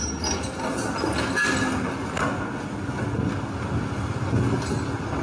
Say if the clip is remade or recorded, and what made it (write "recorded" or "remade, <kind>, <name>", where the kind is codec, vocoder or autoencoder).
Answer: recorded